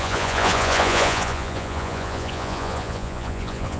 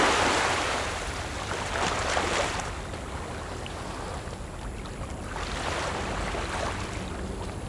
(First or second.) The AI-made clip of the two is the first